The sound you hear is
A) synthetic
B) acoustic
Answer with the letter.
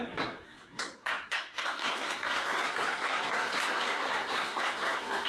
A